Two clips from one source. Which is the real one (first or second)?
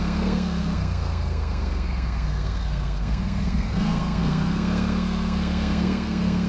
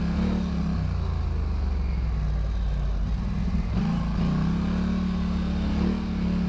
second